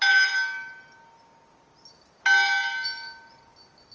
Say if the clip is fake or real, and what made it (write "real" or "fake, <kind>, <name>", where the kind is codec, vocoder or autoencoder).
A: real